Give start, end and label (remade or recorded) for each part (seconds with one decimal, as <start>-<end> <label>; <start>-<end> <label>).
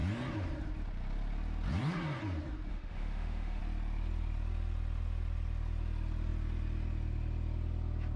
0.0-2.7 recorded; 2.7-3.6 remade; 3.6-8.2 recorded